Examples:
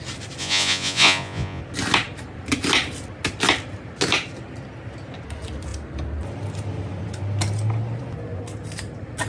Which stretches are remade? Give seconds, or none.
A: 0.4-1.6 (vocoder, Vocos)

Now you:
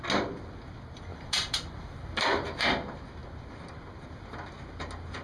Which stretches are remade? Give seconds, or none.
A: 1.1-2.6 (vocoder, BigVGAN v2)

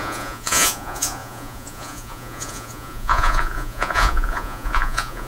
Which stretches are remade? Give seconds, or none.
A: 0.0-5.3 (vocoder, Vocos)

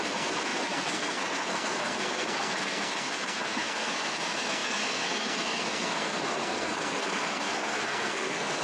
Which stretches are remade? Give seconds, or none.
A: 0.0-8.6 (codec, SNAC)

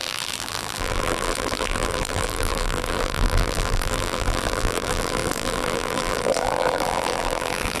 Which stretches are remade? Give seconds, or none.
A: 0.0-7.8 (vocoder, BigVGAN v2)